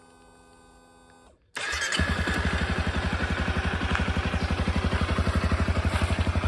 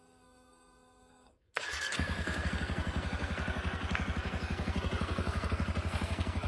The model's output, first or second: second